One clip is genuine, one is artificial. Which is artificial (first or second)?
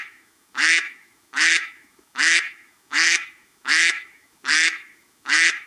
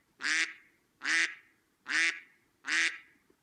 first